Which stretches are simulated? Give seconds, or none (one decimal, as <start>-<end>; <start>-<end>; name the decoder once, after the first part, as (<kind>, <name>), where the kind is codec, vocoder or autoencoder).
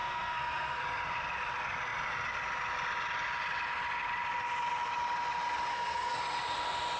0.0-0.8 (codec, SNAC); 5.7-6.2